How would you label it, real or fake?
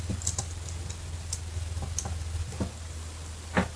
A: fake